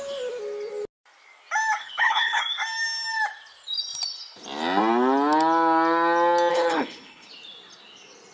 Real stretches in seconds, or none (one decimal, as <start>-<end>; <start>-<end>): 0.0-1.8; 2.4-6.5; 7.3-8.3